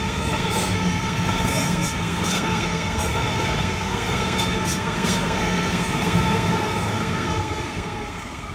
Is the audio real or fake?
fake